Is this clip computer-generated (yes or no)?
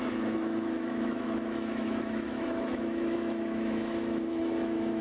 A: yes